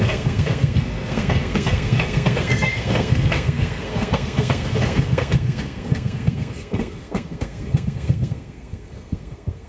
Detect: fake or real fake